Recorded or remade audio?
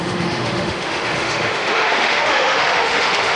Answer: remade